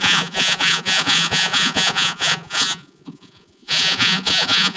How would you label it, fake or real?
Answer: fake